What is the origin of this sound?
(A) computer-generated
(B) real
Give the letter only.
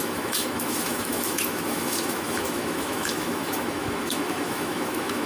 A